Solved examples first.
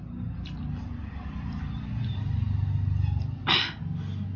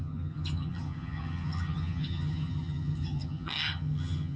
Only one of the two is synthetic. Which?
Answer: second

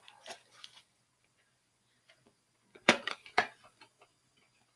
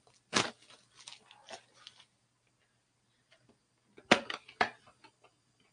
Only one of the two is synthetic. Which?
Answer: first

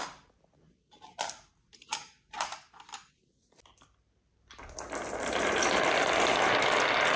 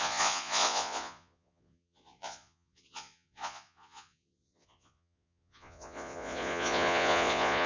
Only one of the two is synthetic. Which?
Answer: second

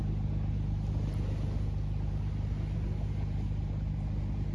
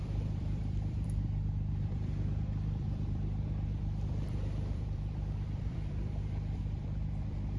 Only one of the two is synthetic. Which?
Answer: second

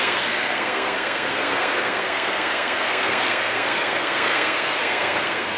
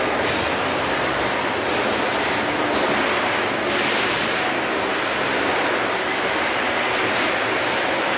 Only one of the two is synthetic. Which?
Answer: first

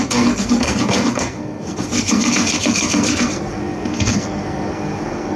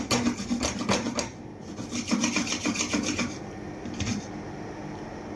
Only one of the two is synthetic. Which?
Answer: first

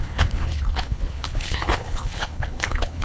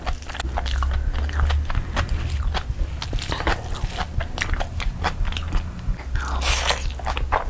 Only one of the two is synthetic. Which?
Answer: first